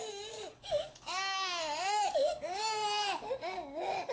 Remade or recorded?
remade